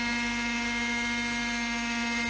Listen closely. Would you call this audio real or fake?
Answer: real